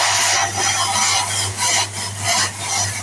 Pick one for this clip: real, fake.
real